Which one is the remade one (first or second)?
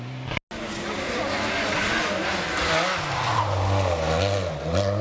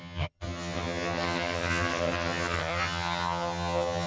second